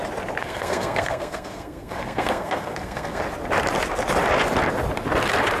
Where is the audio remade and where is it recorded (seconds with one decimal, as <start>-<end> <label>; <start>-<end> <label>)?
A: 0.0-0.4 recorded; 0.4-3.2 remade; 3.2-5.6 recorded